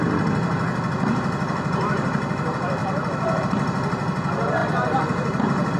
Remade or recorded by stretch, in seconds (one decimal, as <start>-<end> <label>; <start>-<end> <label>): 0.0-2.8 recorded; 2.8-3.4 remade; 3.4-4.6 recorded; 4.6-5.8 remade